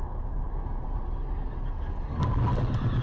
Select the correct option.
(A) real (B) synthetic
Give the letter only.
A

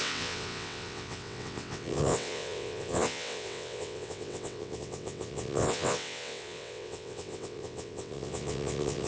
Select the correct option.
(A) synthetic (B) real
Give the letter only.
A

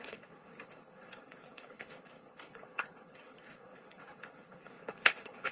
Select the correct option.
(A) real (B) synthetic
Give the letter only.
B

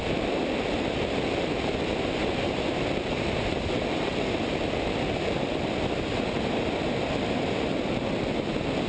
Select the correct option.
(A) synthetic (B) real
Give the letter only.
B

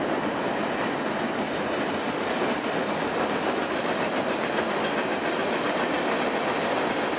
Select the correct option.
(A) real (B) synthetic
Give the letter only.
A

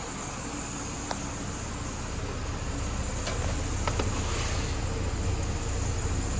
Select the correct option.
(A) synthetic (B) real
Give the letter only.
B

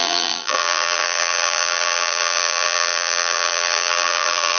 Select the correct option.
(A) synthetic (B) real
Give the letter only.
A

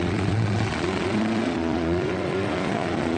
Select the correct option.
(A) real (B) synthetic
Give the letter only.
B